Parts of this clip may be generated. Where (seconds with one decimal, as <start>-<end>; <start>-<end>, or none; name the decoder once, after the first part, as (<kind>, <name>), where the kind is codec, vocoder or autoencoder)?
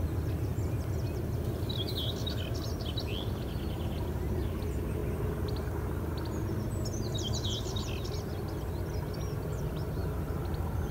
none